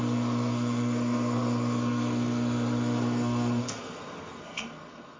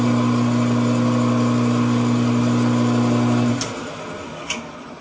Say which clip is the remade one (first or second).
first